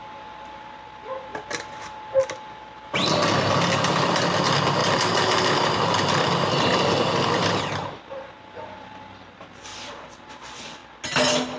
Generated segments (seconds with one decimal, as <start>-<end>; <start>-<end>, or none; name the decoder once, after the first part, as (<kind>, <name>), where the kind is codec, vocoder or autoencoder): 4.8-5.5 (vocoder, BigVGAN v2); 9.7-10.3